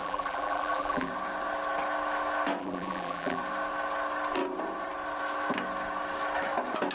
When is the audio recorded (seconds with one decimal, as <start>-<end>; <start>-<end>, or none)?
1.1-2.6; 3.4-6.9